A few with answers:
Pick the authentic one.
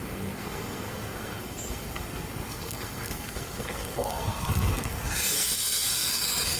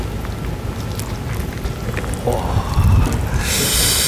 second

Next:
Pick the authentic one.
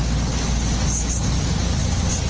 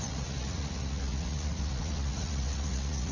first